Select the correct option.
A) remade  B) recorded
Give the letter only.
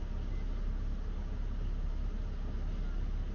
B